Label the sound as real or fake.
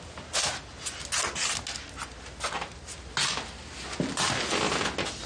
real